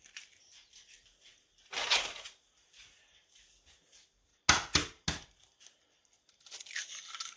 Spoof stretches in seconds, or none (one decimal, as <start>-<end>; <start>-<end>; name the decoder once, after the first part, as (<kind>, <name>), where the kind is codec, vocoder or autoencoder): none